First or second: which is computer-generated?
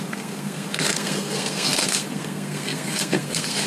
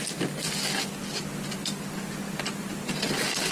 first